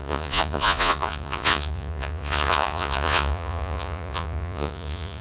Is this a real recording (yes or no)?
no